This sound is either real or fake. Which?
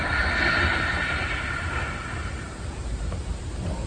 real